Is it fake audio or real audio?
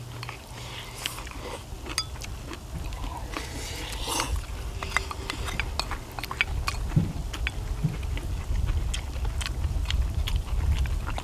real